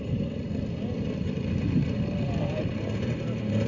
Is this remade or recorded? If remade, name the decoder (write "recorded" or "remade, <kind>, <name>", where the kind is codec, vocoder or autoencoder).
recorded